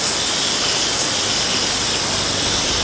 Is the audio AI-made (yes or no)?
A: no